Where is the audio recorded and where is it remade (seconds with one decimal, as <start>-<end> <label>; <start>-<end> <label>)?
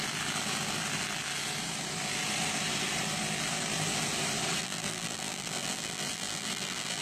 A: 0.0-4.6 recorded; 4.6-7.0 remade